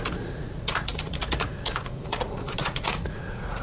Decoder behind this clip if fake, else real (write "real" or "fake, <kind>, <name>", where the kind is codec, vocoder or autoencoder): fake, vocoder, Vocos